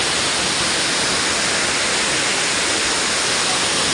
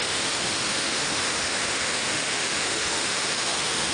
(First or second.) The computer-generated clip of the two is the second